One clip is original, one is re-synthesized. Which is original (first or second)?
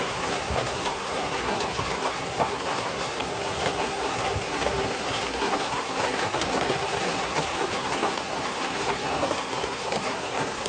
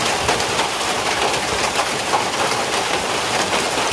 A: second